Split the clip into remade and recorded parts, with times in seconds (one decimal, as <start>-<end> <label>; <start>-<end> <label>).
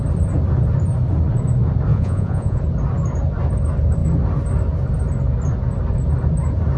0.0-1.9 recorded; 1.9-2.6 remade; 2.6-6.8 recorded